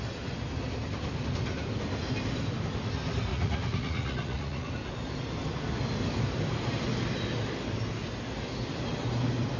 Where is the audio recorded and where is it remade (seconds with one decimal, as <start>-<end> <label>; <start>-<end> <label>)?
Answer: 0.0-3.3 recorded; 3.3-4.7 remade; 4.7-9.6 recorded